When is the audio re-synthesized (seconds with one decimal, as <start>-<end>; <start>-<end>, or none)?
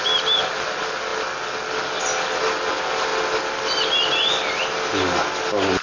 none